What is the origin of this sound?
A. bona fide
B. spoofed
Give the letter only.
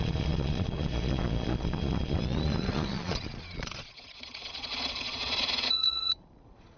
B